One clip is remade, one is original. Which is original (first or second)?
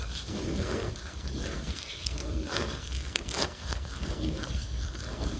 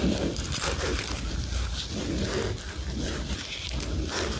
second